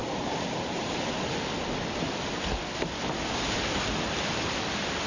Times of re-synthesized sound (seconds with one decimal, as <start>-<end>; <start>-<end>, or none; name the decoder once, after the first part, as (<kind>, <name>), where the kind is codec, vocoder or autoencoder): 0.0-1.3 (vocoder, BigVGAN v2)